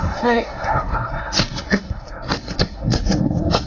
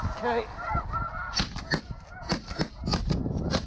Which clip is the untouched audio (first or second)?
second